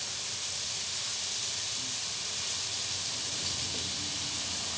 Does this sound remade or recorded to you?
recorded